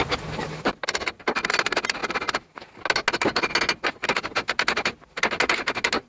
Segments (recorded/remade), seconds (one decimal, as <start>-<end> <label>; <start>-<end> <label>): 0.0-6.1 recorded